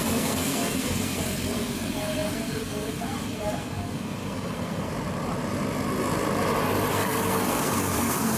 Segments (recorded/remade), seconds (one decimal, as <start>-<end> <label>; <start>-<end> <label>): 0.0-4.9 remade; 4.9-6.9 recorded; 6.9-8.4 remade